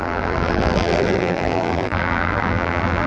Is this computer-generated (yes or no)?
yes